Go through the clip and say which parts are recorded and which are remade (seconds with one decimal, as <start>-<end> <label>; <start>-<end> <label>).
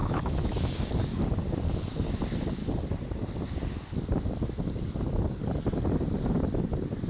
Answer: 0.0-0.9 remade; 0.9-7.1 recorded